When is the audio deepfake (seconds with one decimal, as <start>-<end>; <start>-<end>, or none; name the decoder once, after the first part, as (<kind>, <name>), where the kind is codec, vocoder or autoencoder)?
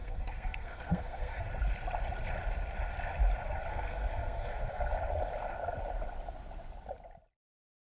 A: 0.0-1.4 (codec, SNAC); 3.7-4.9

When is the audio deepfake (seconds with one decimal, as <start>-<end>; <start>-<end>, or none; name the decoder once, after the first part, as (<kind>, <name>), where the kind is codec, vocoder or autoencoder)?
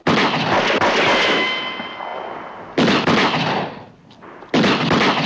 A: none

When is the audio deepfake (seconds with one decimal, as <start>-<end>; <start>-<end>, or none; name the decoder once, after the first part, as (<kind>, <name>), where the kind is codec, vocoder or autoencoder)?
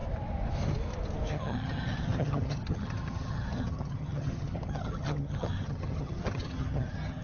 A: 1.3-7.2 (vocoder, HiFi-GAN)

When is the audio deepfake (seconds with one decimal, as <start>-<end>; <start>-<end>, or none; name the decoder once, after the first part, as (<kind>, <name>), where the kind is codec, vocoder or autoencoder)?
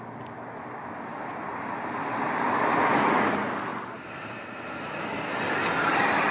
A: 2.1-2.7 (vocoder, BigVGAN v2); 3.7-4.3